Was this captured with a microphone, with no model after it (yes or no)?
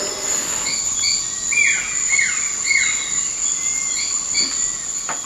yes